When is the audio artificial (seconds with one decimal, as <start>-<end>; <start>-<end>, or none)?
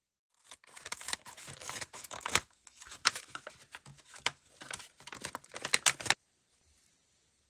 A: 0.9-3.5; 3.9-4.5